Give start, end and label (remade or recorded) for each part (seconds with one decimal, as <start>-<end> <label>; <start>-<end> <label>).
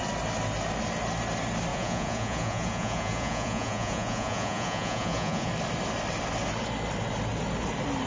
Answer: 0.0-1.7 recorded; 1.7-5.5 remade; 5.5-8.1 recorded